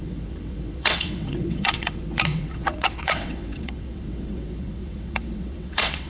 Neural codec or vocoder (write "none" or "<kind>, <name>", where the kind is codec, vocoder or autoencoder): vocoder, WaveNeXt